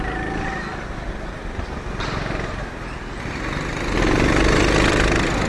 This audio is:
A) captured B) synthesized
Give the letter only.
A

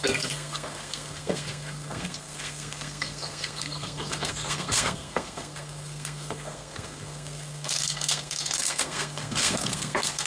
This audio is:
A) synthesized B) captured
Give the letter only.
A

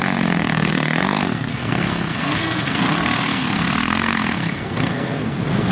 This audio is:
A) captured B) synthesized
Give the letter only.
B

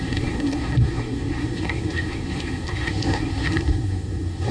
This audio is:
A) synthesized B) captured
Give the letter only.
A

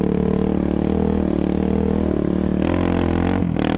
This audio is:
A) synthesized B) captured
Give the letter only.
B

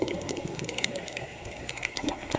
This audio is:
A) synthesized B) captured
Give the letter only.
A